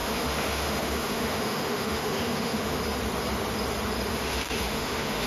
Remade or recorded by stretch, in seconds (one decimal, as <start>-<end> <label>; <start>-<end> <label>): 0.0-2.8 remade; 2.8-4.1 recorded; 4.1-5.3 remade